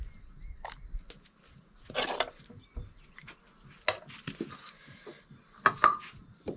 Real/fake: real